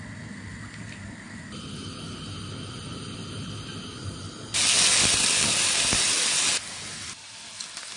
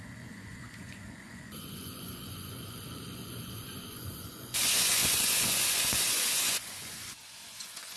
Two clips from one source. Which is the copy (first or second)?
second